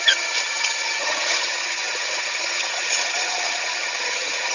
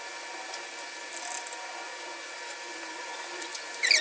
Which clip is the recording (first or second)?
second